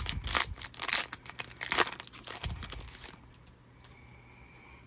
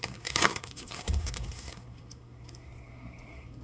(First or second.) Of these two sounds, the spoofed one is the second